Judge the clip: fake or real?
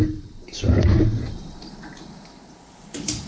fake